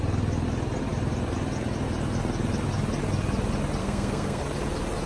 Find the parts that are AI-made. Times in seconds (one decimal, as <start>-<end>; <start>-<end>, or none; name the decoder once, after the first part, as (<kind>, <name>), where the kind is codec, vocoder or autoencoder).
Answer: 3.8-4.4 (codec, SNAC)